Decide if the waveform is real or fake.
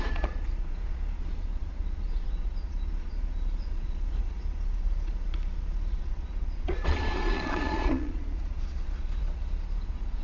fake